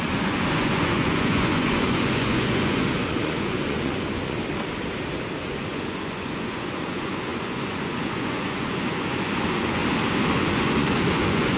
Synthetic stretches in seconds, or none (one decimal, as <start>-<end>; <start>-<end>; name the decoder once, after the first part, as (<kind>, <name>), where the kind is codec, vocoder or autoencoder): 0.0-4.4 (vocoder, Vocos); 5.4-9.8; 10.3-11.6